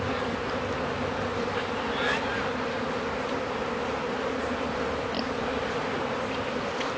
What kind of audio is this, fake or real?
real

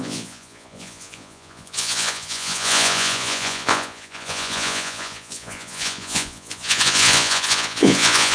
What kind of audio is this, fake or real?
fake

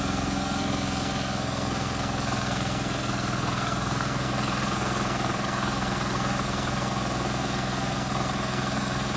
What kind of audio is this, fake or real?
fake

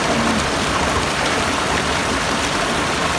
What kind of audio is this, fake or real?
real